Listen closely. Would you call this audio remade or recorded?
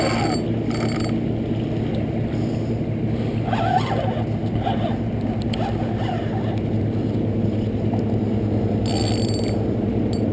recorded